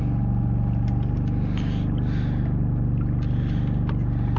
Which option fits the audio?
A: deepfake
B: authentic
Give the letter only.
B